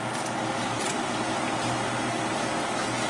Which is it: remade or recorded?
recorded